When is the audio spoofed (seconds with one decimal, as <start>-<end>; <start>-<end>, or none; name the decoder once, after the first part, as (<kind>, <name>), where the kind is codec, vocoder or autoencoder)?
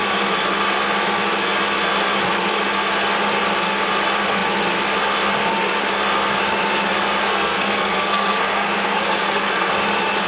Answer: 7.2-9.7 (codec, SNAC)